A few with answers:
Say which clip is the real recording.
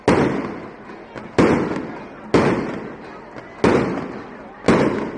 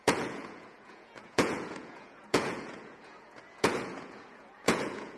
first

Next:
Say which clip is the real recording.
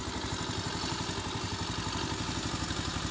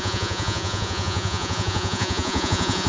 first